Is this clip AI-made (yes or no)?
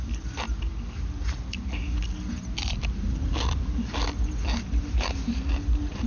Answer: no